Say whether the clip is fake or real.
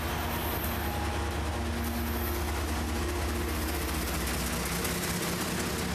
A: real